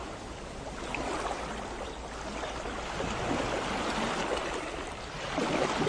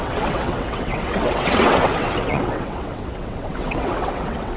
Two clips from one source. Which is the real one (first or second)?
first